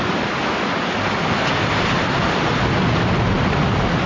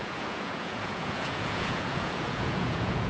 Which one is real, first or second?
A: first